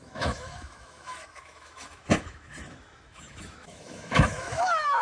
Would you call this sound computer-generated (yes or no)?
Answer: yes